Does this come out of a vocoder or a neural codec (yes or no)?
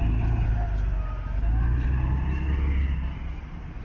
no